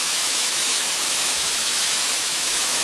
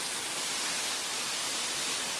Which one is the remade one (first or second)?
first